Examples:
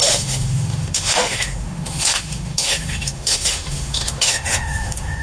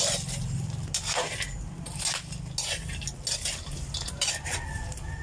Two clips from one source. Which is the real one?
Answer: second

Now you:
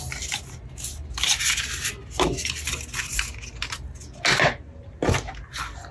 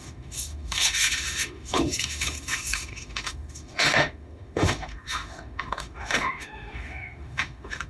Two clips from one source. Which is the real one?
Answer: first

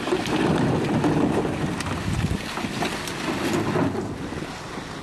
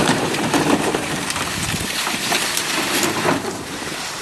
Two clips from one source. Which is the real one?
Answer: first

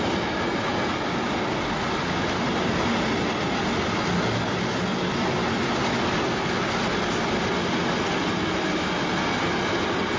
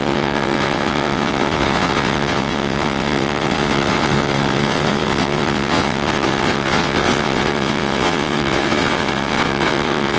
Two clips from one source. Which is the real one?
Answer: first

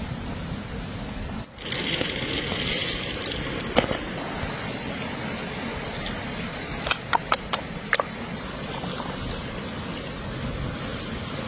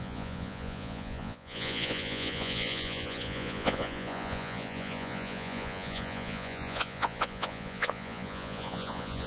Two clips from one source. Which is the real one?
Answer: first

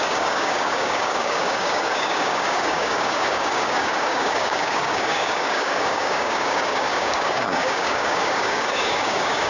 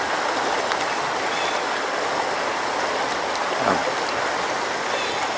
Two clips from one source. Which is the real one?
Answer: second